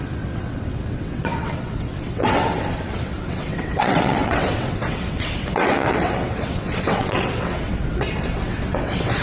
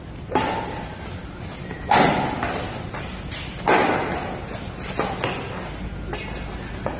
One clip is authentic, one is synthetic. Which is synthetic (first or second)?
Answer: first